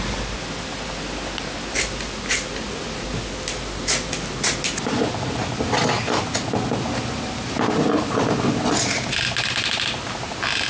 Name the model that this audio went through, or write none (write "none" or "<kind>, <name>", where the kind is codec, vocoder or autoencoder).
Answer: none